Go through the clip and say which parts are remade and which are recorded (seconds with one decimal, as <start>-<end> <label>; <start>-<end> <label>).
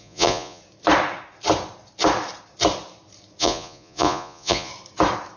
0.0-0.6 remade; 0.6-3.4 recorded; 3.4-4.7 remade; 4.7-5.4 recorded